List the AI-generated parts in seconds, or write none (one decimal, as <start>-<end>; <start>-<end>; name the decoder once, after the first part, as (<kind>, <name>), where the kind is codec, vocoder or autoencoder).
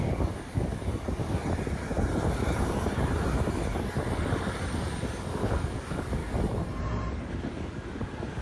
0.0-1.4 (codec, DAC); 5.3-6.2; 7.1-8.4